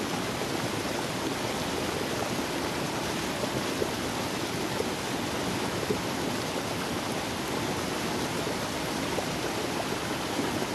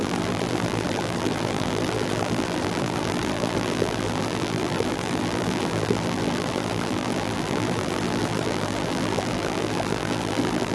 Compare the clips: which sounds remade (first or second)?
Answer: second